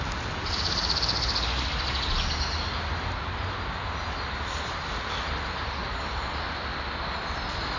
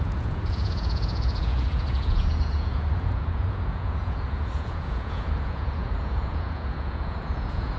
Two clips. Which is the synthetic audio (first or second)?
second